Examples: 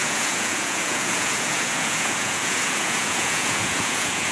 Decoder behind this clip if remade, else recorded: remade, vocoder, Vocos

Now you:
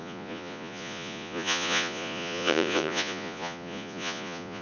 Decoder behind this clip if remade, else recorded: remade, vocoder, Vocos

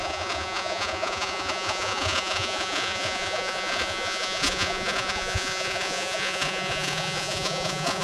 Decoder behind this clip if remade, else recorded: remade, vocoder, Vocos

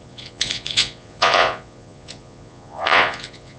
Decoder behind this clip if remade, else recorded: remade, vocoder, Vocos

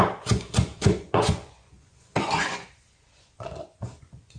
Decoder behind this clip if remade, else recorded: remade, vocoder, Vocos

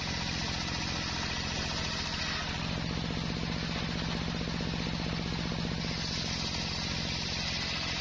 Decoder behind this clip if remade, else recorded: recorded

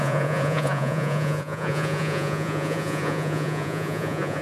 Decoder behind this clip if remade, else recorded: remade, vocoder, Vocos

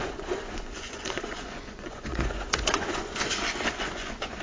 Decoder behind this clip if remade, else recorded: remade, vocoder, Vocos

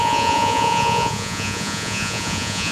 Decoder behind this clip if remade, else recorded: remade, vocoder, Vocos